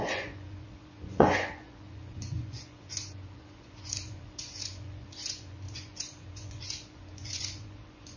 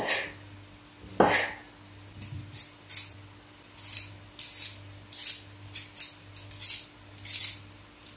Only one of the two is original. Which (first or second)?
second